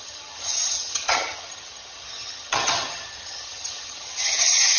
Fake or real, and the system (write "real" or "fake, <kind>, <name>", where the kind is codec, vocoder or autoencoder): fake, vocoder, HiFi-GAN